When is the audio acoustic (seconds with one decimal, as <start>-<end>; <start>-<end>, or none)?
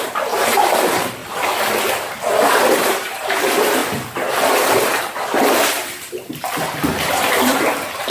1.2-2.8; 3.8-4.3